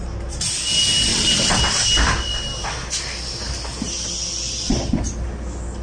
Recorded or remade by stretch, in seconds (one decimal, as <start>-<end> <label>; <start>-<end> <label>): 0.0-1.1 recorded; 1.1-1.6 remade; 1.6-5.8 recorded

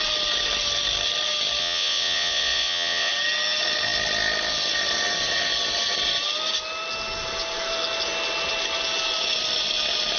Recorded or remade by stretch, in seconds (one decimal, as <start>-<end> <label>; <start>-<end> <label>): 0.0-1.6 recorded; 1.6-3.1 remade; 3.1-10.2 recorded

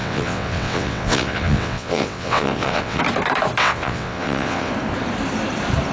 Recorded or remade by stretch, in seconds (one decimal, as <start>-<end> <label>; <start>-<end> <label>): 0.0-3.0 remade; 3.0-3.6 recorded; 3.6-4.7 remade; 4.7-5.9 recorded

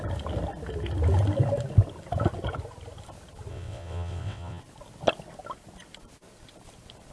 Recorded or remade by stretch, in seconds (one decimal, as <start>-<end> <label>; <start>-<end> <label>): 0.0-3.5 recorded; 3.5-4.6 remade; 4.6-7.1 recorded